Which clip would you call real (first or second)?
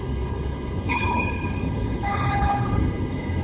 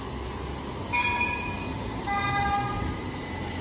second